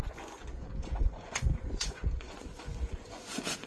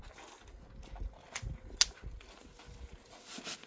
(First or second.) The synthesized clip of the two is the first